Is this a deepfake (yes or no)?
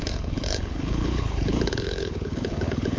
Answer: yes